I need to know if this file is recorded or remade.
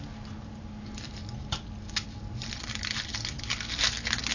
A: recorded